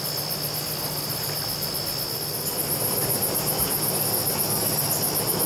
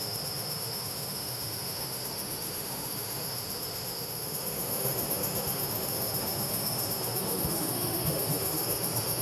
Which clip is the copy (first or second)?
second